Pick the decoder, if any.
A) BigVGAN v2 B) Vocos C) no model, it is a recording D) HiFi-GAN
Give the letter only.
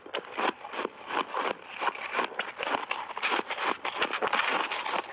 C